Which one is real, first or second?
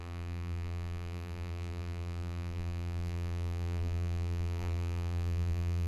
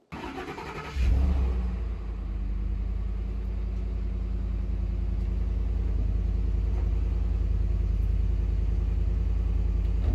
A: second